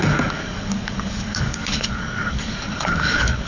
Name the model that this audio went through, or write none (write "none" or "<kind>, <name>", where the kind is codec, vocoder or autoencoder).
codec, DAC